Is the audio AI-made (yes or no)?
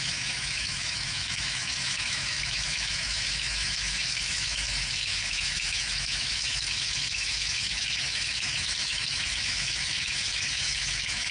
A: yes